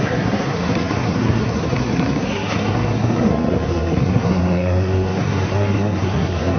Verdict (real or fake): fake